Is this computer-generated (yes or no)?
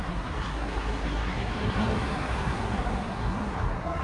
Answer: yes